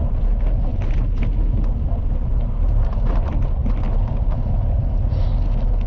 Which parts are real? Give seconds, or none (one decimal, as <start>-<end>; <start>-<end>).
0.0-2.3; 3.1-5.9